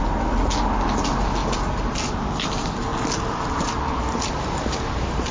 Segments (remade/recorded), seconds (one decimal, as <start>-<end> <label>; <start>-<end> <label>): 0.0-5.3 recorded